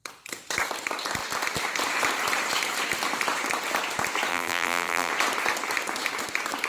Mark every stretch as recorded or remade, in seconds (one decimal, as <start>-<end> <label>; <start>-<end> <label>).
0.0-4.3 recorded; 4.3-5.1 remade; 5.1-6.7 recorded